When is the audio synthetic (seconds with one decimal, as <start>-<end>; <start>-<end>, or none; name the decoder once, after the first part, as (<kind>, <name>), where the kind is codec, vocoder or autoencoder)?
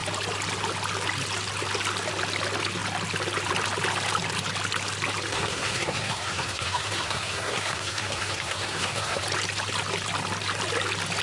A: 5.3-9.2 (codec, SNAC)